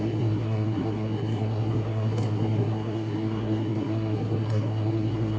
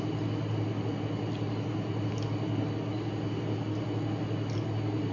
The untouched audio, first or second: second